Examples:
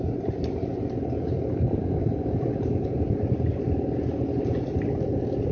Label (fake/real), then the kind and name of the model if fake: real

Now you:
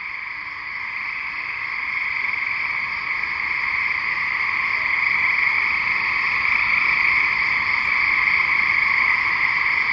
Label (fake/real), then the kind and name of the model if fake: real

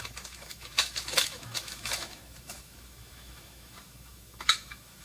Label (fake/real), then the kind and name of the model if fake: fake, autoencoder, DAC-VAE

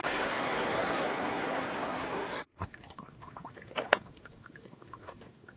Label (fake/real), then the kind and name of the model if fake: fake, codec, SNAC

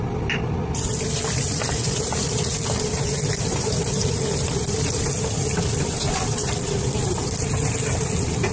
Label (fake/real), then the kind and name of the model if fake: real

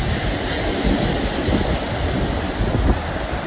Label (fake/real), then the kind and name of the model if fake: fake, vocoder, BigVGAN v2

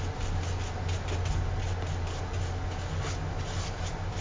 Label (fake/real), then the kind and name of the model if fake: real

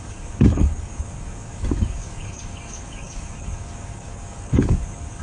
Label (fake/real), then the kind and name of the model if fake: fake, codec, DAC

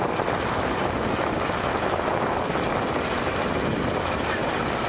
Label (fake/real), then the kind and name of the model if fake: real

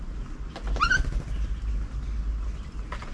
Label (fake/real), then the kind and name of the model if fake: real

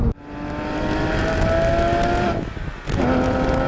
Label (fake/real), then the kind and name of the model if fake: real